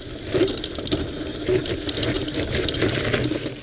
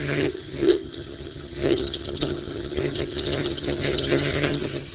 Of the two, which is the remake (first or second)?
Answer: second